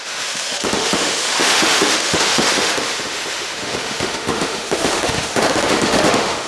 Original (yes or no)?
no